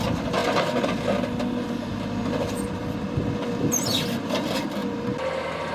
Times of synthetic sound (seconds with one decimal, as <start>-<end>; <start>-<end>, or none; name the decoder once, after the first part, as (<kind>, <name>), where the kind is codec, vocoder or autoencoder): none